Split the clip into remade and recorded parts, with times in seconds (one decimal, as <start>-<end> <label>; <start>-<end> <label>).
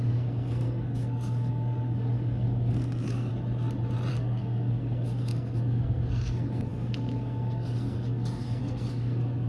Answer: 0.0-3.3 remade; 3.3-4.1 recorded; 4.1-9.5 remade